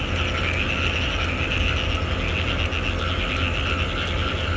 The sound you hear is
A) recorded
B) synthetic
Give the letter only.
A